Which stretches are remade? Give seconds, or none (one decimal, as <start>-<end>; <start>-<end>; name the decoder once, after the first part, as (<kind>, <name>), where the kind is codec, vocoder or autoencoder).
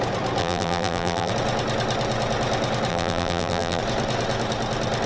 0.4-1.3 (vocoder, BigVGAN v2); 2.9-3.8